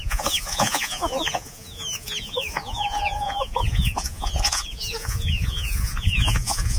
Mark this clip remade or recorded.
remade